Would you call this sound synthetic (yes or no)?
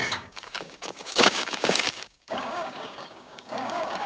yes